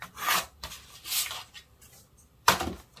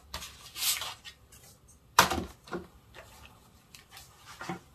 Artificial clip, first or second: first